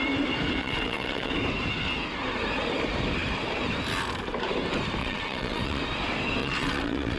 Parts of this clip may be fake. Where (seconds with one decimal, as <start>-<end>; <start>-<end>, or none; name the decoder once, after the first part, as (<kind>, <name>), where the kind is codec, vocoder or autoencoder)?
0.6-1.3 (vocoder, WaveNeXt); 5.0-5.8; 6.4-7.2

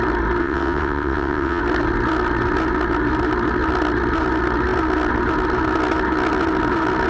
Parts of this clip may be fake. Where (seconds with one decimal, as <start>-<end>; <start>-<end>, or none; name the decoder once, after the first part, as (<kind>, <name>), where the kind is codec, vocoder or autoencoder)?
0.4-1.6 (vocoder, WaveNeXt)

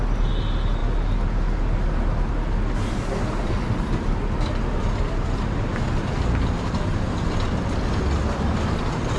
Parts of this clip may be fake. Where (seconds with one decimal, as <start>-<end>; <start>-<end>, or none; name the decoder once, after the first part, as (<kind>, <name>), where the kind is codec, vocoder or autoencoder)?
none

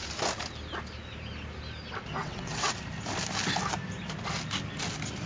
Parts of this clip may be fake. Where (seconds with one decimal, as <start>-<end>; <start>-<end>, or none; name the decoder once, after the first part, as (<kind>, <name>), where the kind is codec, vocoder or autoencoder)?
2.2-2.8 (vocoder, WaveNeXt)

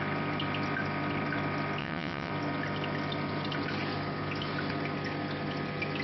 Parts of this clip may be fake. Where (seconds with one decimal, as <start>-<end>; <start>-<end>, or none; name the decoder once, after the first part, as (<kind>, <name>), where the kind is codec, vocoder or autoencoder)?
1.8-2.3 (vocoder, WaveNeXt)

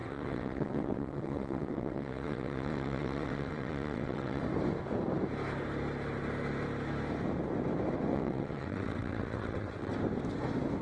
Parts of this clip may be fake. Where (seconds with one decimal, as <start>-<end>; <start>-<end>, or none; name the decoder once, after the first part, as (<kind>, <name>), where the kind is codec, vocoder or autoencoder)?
0.0-4.4 (vocoder, WaveNeXt); 8.1-9.9

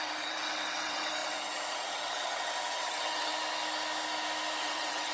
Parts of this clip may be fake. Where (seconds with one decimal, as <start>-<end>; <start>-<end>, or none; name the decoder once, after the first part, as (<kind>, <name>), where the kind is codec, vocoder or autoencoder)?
0.0-3.3 (vocoder, WaveNeXt); 4.6-5.1

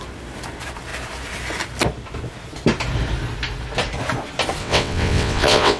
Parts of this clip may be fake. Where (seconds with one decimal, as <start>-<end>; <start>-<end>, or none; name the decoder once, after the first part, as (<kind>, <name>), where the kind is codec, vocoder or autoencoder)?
4.6-5.8 (vocoder, WaveNeXt)